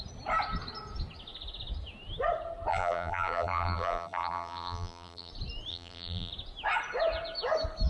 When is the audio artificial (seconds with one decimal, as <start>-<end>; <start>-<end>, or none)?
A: 2.7-5.3; 5.7-6.3

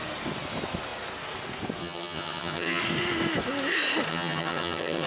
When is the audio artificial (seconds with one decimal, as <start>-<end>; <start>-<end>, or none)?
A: 1.8-2.8; 4.1-5.1

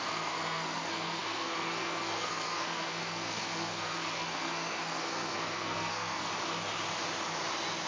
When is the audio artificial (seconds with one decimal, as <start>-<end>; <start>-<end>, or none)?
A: 0.0-6.3

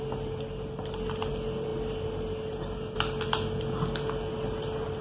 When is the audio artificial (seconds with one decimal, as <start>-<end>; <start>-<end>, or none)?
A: none